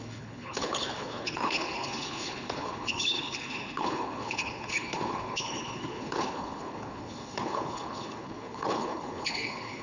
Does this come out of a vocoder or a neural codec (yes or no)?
yes